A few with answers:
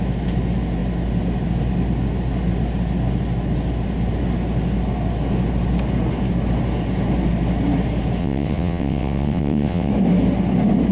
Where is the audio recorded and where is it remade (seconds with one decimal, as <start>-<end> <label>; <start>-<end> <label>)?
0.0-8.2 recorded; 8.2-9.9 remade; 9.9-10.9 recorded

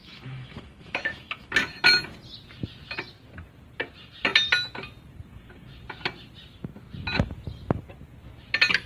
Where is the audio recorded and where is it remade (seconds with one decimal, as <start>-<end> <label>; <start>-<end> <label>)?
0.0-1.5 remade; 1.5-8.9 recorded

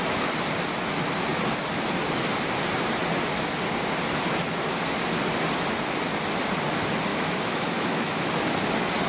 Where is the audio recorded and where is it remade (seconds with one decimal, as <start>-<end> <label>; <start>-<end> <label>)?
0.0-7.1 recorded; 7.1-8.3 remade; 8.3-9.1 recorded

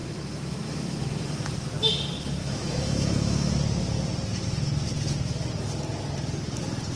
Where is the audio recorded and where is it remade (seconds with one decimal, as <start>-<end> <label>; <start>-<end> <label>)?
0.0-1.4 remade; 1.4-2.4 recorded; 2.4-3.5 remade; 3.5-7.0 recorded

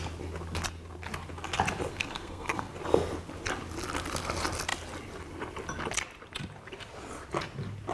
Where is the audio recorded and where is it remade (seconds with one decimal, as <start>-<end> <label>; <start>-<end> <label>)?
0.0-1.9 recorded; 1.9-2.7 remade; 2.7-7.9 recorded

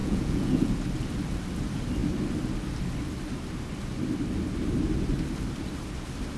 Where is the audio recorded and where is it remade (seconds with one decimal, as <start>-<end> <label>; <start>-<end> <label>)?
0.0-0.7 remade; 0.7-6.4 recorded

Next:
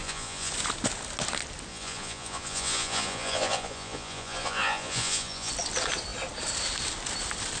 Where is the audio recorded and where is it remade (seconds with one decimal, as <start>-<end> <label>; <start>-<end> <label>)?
0.0-0.5 remade; 0.5-1.7 recorded; 1.7-5.5 remade; 5.5-7.6 recorded